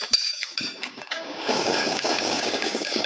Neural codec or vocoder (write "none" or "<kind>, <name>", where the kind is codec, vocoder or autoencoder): codec, DAC